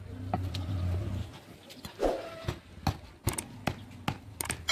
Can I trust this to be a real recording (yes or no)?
yes